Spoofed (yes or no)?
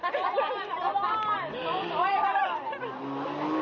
no